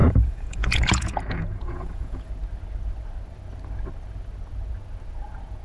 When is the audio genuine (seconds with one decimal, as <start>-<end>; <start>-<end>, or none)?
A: 2.3-5.6